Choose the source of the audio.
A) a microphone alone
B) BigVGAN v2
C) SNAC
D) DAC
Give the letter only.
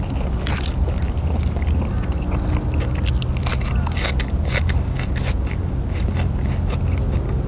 A